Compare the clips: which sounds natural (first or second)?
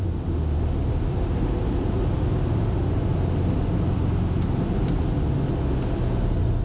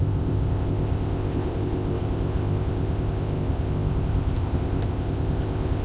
first